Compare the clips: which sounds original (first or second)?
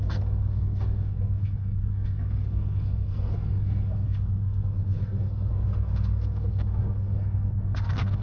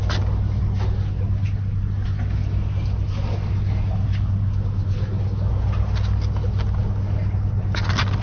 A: second